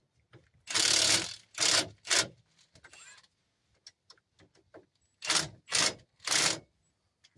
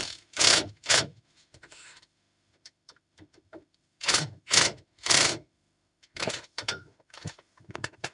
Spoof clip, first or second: second